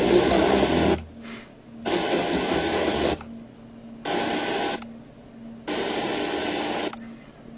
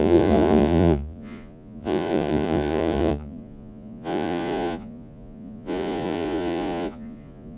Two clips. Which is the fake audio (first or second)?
second